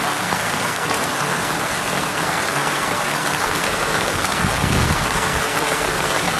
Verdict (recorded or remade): remade